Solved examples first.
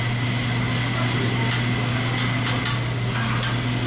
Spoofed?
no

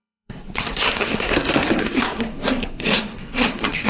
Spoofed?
yes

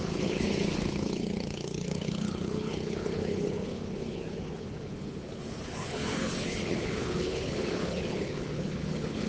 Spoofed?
yes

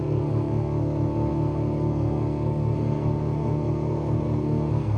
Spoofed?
yes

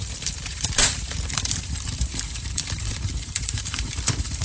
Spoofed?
yes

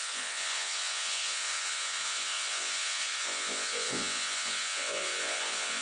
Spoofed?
yes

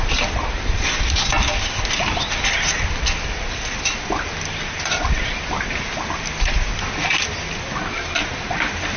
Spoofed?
no